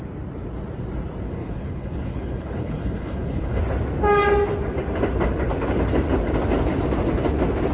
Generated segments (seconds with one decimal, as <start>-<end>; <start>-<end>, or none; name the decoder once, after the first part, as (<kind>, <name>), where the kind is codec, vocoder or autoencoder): 1.4-3.6 (codec, HILCodec)